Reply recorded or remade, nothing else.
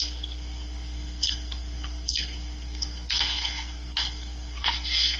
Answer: remade